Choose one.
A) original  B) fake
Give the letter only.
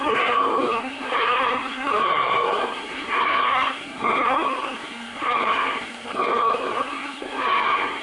B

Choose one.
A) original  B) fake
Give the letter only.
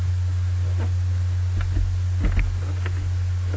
A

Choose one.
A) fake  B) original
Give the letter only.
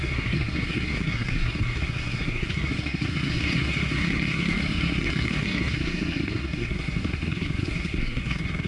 A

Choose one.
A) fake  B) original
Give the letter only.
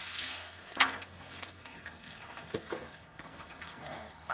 A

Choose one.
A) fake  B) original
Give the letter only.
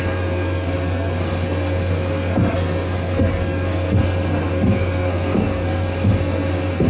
A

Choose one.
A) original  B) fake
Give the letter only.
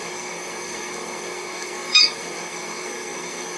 B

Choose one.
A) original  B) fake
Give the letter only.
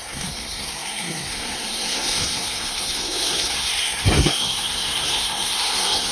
B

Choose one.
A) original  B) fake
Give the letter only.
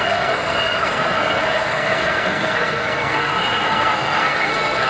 B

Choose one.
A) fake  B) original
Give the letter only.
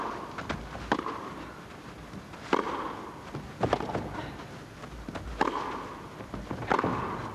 B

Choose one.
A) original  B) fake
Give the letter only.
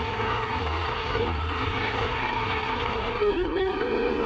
B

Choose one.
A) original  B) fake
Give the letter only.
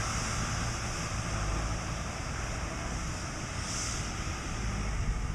A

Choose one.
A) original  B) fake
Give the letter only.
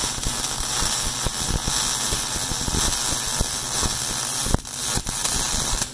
A